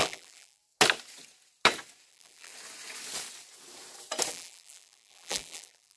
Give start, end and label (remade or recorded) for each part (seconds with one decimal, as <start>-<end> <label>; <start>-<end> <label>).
0.0-0.6 remade; 0.6-2.1 recorded; 2.1-2.5 remade; 2.5-4.3 recorded; 4.3-6.0 remade